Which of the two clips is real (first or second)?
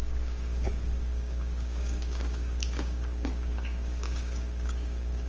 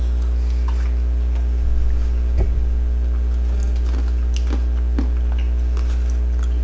second